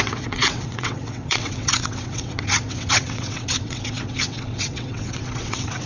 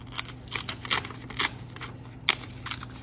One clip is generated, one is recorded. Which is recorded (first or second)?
second